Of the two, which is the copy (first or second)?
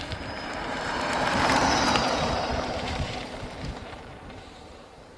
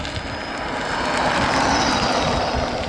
first